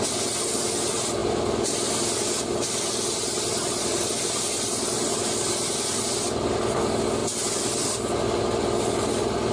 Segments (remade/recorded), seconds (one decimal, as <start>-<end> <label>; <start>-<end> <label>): 0.0-9.5 recorded